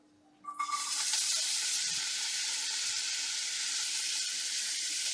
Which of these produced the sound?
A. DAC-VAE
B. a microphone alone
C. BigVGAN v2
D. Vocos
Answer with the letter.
C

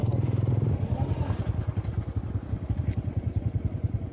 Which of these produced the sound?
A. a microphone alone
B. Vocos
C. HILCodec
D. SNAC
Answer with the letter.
A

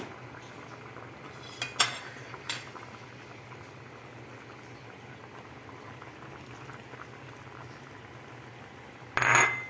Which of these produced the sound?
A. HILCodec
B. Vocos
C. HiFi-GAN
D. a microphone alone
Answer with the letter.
D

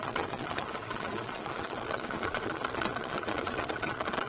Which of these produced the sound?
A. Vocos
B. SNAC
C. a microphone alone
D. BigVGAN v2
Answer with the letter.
A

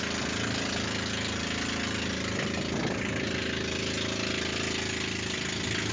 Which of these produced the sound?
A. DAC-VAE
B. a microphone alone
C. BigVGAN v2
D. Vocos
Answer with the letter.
B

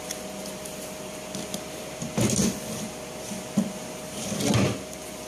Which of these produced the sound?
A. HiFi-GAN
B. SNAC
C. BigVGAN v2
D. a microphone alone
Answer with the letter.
D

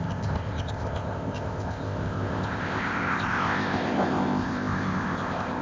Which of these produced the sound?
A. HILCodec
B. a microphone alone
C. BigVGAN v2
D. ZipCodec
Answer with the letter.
D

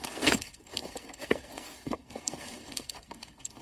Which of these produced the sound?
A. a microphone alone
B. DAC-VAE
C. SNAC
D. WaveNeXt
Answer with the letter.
C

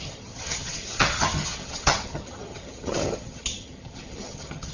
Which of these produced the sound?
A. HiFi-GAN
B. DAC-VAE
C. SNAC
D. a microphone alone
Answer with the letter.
A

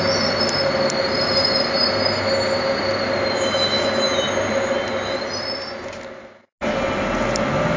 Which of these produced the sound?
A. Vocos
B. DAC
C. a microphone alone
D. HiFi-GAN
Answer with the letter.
C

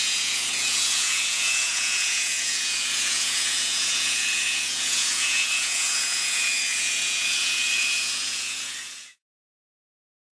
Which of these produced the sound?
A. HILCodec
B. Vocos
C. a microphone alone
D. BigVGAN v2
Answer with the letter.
B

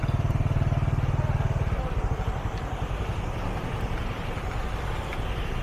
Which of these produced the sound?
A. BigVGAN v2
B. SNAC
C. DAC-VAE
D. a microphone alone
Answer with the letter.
D